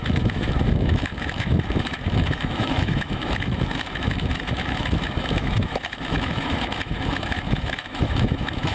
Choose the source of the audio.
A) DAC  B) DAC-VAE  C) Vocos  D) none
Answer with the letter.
B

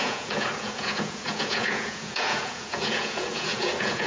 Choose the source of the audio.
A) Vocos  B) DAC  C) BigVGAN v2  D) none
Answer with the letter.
A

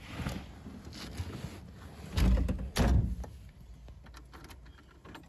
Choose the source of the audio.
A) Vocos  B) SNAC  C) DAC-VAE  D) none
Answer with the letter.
D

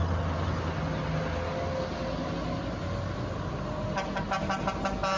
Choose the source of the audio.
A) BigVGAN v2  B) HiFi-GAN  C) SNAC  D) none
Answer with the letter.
D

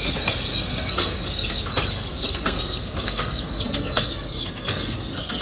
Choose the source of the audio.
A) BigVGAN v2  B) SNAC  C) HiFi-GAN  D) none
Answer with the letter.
B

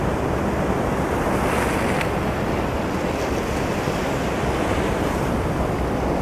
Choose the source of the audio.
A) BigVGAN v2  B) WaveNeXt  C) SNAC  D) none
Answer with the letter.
D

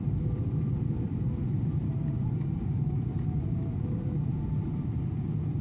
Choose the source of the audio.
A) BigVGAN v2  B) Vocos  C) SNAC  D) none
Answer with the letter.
A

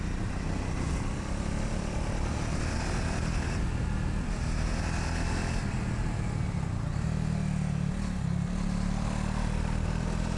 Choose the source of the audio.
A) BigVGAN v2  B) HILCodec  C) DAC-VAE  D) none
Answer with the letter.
D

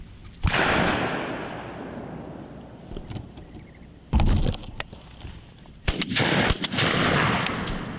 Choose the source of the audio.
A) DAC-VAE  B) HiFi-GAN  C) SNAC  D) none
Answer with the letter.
D